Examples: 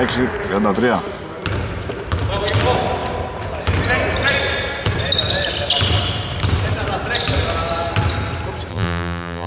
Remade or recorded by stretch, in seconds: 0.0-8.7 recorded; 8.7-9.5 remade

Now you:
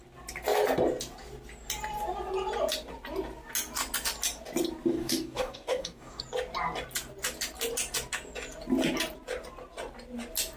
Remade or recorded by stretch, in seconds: 0.0-4.9 recorded; 4.9-6.2 remade; 6.2-10.6 recorded

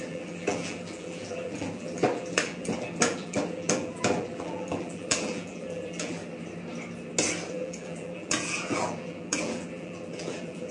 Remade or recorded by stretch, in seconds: 0.0-6.2 remade; 6.2-7.5 recorded; 7.5-10.7 remade

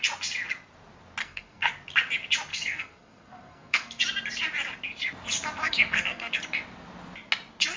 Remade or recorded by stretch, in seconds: 0.0-1.2 recorded; 1.2-1.7 remade; 1.7-2.5 recorded; 2.5-4.0 remade; 4.0-5.6 recorded; 5.6-6.3 remade; 6.3-7.8 recorded

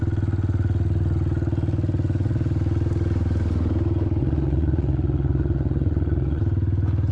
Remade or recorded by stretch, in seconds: 0.0-4.2 recorded; 4.2-6.4 remade; 6.4-7.1 recorded

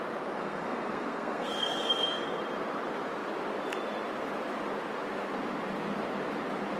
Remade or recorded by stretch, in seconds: 0.0-0.4 recorded; 0.4-2.4 remade; 2.4-6.8 recorded